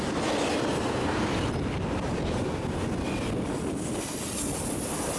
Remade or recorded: recorded